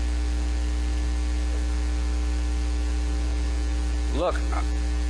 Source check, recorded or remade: recorded